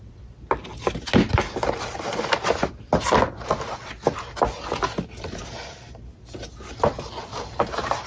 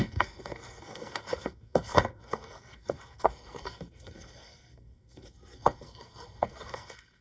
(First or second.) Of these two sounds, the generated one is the second